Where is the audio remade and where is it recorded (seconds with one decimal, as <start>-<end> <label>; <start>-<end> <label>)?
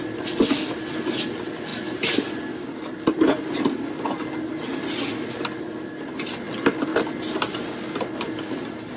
0.0-9.0 recorded